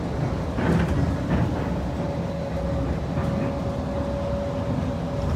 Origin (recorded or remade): recorded